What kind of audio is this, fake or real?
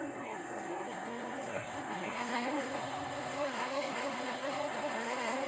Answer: fake